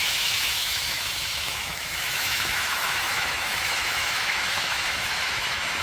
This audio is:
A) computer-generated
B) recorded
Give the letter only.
A